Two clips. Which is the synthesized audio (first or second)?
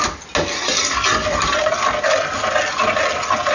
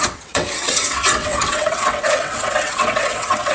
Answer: second